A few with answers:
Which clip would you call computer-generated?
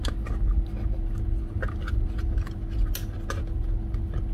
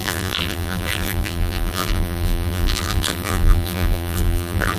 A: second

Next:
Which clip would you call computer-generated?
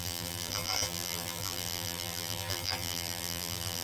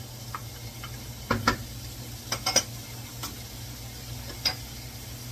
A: first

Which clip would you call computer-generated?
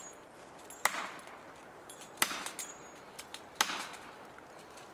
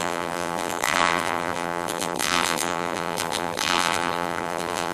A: second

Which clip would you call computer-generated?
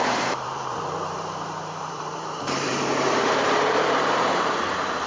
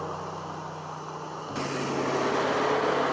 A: first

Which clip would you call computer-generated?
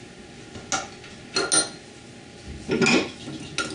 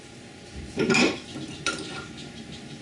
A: second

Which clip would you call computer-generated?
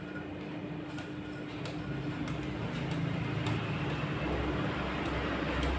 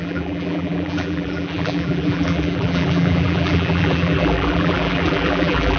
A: second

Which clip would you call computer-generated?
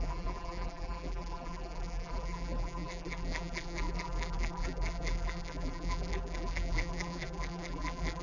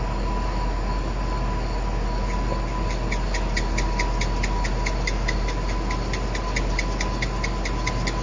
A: first